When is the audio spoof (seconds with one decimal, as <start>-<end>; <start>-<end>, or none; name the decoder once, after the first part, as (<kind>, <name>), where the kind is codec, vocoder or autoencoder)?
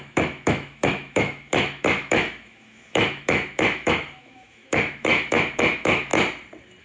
0.0-6.1 (autoencoder, DAC-VAE)